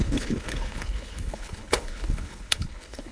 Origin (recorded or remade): remade